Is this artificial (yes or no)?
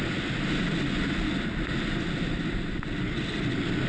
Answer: no